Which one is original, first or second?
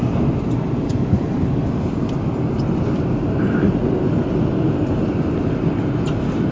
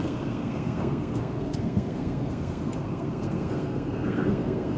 first